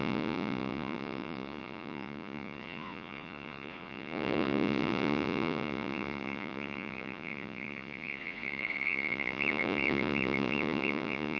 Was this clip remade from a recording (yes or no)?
yes